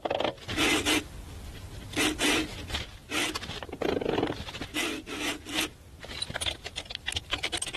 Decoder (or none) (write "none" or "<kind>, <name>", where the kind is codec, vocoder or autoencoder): none